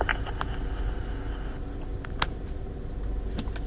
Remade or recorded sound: recorded